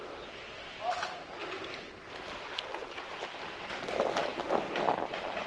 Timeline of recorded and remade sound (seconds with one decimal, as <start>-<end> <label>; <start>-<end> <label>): 0.0-5.5 recorded